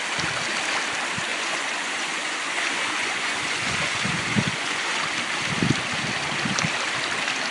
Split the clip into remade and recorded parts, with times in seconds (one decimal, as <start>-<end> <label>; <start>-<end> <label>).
0.0-1.3 recorded; 1.3-5.0 remade; 5.0-7.5 recorded